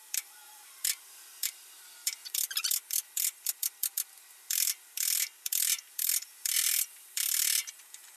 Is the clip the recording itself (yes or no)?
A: no